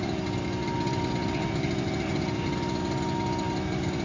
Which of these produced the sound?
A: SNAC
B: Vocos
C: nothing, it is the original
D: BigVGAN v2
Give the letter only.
C